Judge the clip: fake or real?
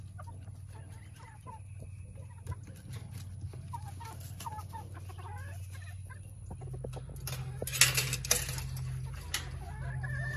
real